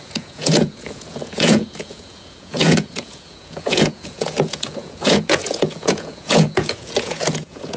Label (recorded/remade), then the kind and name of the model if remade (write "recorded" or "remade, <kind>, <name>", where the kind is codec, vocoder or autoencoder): remade, vocoder, Vocos